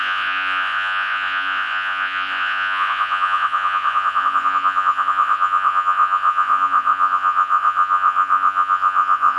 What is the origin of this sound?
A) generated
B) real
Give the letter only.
A